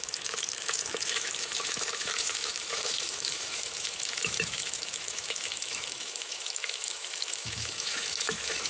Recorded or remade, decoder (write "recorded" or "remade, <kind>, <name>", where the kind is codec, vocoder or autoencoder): remade, autoencoder, DAC-VAE